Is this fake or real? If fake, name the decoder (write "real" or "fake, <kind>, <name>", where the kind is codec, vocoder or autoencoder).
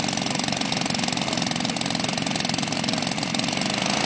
real